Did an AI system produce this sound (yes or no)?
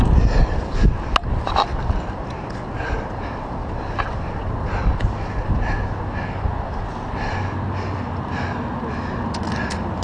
no